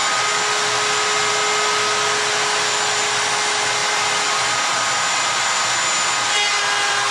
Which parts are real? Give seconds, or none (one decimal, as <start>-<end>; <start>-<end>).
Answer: 0.0-7.1